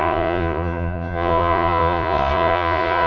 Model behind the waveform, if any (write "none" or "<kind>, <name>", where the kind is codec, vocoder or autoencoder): vocoder, Vocos